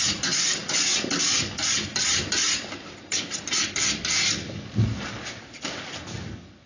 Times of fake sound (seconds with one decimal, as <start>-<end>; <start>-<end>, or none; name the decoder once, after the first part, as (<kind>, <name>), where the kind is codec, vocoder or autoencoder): none